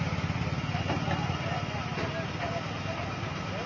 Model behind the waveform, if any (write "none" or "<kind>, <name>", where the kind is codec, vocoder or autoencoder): none